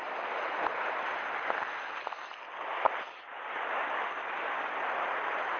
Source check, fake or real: real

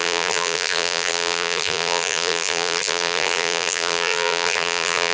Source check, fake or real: fake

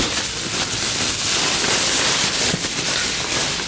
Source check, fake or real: real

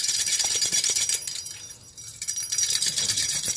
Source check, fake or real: fake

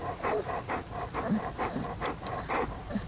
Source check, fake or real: fake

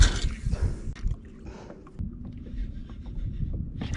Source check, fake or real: real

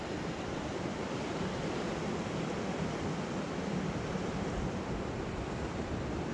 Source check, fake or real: fake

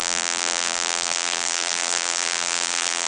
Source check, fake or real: fake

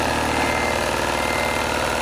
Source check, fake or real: real